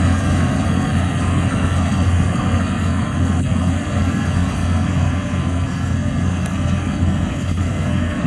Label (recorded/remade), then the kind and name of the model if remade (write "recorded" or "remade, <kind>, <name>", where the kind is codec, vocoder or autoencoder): remade, codec, SNAC